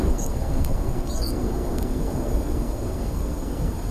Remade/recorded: remade